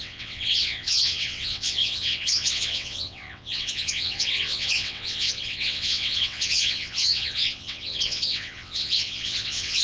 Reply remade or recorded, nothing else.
remade